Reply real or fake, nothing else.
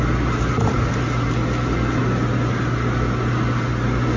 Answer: real